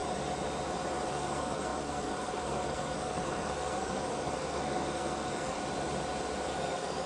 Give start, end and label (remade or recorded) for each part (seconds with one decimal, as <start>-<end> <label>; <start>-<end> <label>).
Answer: 0.0-1.1 recorded; 1.1-5.6 remade; 5.6-6.5 recorded; 6.5-7.1 remade